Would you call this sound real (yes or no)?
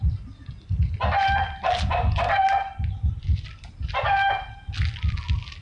yes